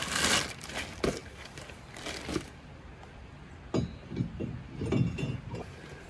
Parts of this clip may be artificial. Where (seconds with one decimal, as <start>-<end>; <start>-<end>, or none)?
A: none